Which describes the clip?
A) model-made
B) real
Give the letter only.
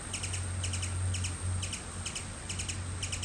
B